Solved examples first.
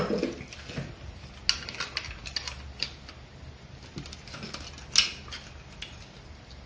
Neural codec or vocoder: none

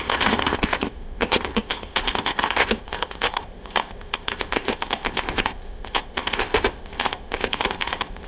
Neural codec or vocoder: codec, ZipCodec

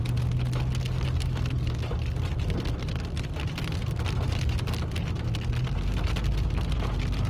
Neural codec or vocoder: none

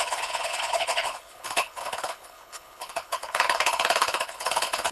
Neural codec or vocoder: codec, HILCodec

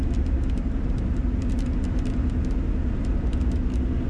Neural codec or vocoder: none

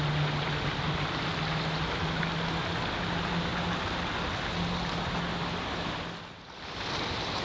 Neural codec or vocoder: none